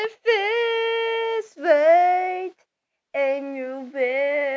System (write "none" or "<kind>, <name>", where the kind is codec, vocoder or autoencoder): none